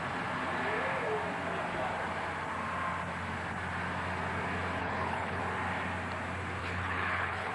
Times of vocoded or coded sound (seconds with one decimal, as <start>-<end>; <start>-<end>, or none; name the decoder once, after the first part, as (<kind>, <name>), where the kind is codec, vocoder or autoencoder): 4.8-5.4 (codec, HILCodec); 6.6-7.5